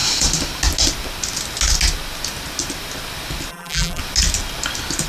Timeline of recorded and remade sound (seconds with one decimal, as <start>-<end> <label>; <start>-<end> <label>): 0.0-3.5 recorded; 3.5-4.0 remade; 4.0-5.1 recorded